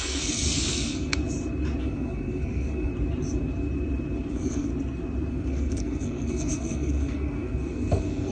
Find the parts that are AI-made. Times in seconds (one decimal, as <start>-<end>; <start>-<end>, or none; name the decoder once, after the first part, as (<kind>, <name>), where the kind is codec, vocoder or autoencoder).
0.0-1.1 (codec, SNAC); 1.8-2.9; 4.3-4.7; 5.3-8.3